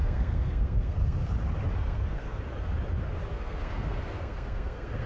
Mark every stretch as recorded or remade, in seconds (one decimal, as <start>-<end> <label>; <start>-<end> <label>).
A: 0.0-1.3 remade; 1.3-1.8 recorded; 1.8-2.4 remade; 2.4-3.3 recorded; 3.3-5.1 remade